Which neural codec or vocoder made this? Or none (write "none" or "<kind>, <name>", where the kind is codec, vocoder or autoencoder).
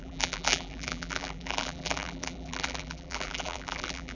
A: vocoder, BigVGAN v2